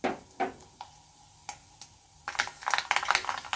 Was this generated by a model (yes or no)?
no